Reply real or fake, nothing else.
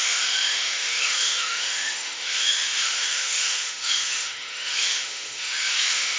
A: fake